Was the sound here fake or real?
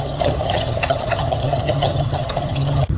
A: fake